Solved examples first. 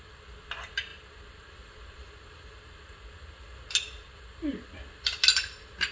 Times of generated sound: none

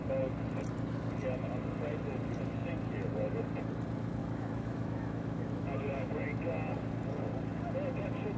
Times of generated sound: 4.2-6.1 (autoencoder, DAC-VAE)

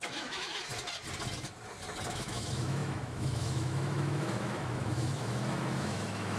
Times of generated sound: 0.0-0.7 (autoencoder, DAC-VAE); 2.1-6.4

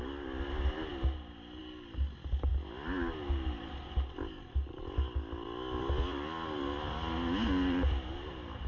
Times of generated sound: none

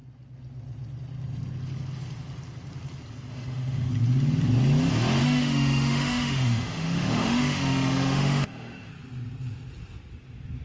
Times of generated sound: 3.3-3.9 (autoencoder, DAC-VAE); 5.2-8.9

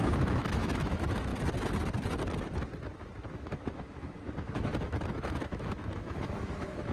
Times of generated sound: 0.0-1.3 (autoencoder, DAC-VAE); 3.3-6.9

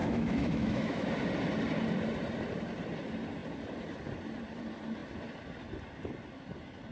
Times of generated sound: 0.0-1.1 (autoencoder, DAC-VAE)

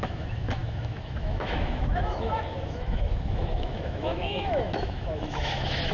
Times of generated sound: 0.0-5.9 (autoencoder, DAC-VAE)